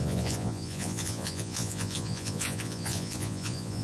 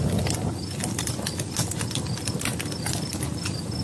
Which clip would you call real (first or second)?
second